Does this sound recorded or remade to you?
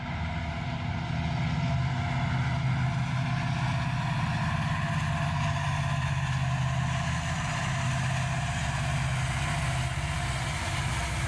recorded